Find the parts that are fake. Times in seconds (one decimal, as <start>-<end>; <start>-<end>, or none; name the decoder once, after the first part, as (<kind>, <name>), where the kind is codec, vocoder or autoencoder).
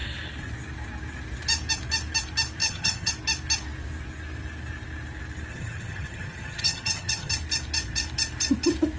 2.6-3.1 (vocoder, HiFi-GAN); 5.5-7.3